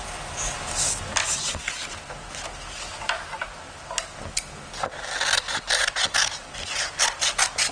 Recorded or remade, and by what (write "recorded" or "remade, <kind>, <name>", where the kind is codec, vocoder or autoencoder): recorded